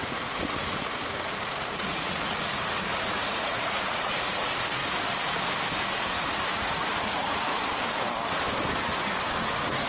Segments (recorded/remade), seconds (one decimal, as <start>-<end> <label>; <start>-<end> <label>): 0.0-4.8 remade; 4.8-6.1 recorded; 6.1-7.6 remade; 7.6-8.7 recorded; 8.7-9.9 remade